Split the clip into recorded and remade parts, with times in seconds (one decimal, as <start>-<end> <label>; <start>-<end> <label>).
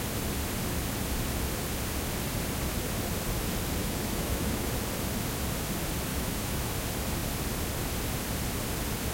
0.0-3.8 recorded; 3.8-4.7 remade; 4.7-6.1 recorded; 6.1-6.7 remade; 6.7-9.1 recorded